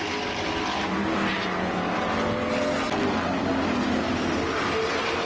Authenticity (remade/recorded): recorded